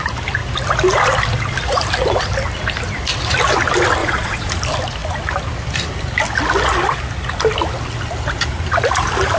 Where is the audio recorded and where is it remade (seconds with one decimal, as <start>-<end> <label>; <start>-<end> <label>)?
0.0-4.0 recorded; 4.0-4.5 remade; 4.5-9.4 recorded